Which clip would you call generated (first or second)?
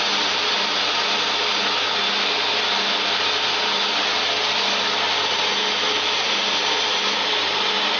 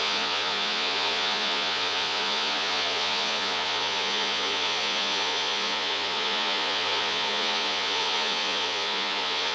second